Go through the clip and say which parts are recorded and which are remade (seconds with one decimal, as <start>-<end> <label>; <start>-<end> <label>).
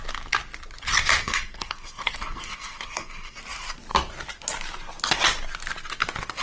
0.0-1.2 recorded; 1.2-3.4 remade; 3.4-6.4 recorded